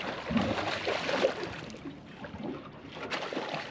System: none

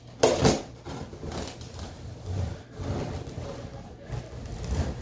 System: none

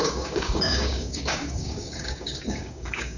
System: codec, DAC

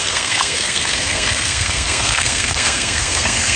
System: codec, SNAC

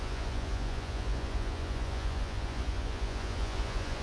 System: vocoder, Vocos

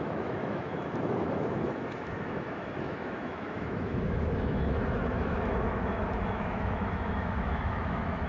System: autoencoder, DAC-VAE